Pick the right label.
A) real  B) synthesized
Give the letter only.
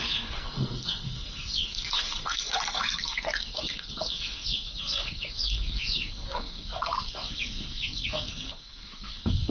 B